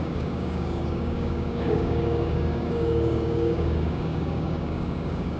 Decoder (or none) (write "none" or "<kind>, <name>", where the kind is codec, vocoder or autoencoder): codec, DAC